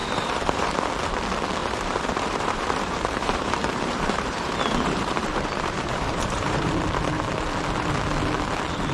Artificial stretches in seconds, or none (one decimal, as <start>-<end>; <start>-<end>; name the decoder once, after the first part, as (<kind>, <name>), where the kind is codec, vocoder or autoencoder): 0.0-0.7 (vocoder, BigVGAN v2); 1.6-6.7